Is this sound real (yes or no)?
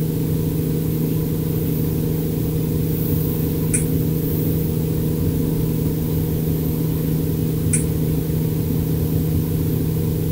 yes